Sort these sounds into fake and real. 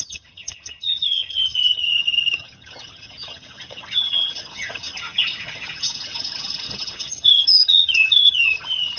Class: fake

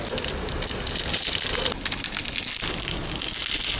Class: real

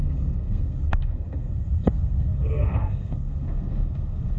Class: fake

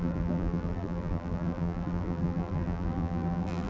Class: fake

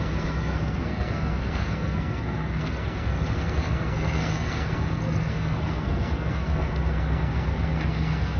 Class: fake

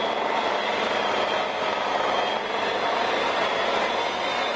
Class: real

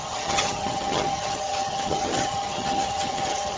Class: fake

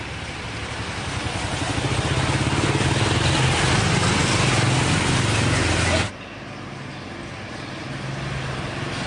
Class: real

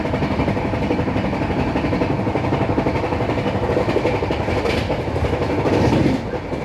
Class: real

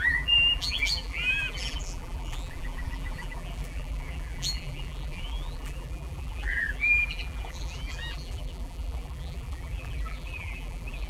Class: fake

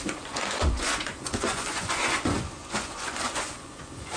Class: fake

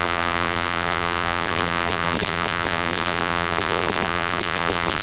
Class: fake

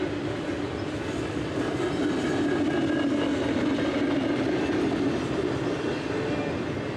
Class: real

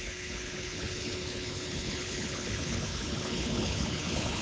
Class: fake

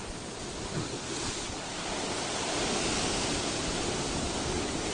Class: real